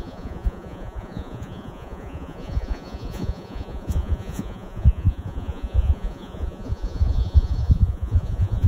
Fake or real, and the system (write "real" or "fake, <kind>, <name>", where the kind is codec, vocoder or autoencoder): fake, vocoder, Vocos